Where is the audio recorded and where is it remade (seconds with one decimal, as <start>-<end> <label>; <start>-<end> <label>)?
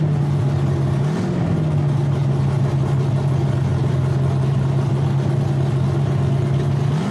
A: 0.0-7.1 recorded